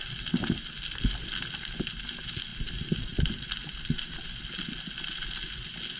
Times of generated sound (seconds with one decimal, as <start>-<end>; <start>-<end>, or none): none